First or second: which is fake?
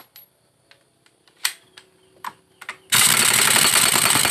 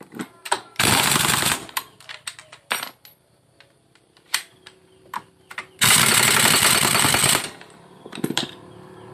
second